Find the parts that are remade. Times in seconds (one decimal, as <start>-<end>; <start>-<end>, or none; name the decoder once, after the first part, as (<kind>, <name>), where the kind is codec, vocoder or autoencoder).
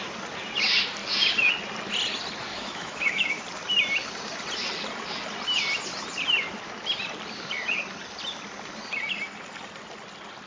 2.5-3.4 (autoencoder, DAC-VAE)